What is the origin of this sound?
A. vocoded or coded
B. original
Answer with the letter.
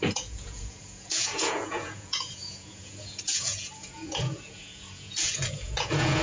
A